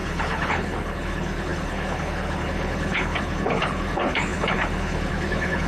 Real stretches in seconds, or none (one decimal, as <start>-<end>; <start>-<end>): none